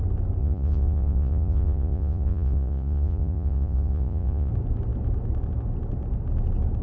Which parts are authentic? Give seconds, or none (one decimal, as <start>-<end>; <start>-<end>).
0.0-0.4; 4.5-6.8